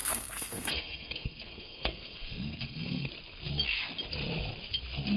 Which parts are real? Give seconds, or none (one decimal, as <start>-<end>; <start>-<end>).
3.1-5.2

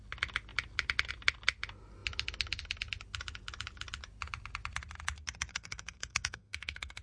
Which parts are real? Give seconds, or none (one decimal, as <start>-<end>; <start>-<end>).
0.0-5.5

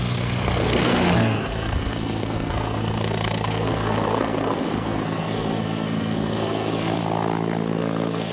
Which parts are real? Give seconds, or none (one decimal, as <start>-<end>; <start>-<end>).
7.0-7.7

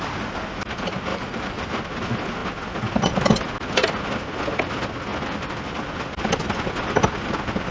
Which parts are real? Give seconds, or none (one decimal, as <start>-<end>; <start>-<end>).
0.0-1.1; 1.6-7.7